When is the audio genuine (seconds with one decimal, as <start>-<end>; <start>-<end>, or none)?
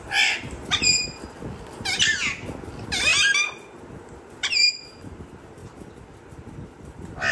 3.1-4.3